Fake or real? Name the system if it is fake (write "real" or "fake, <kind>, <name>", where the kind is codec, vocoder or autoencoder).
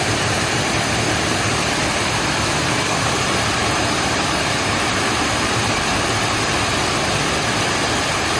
fake, vocoder, BigVGAN v2